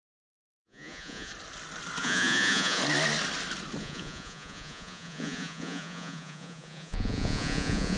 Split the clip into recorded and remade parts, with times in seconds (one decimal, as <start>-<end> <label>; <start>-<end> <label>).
0.0-1.3 remade; 1.3-2.0 recorded; 2.0-2.8 remade; 2.8-3.8 recorded; 3.8-8.0 remade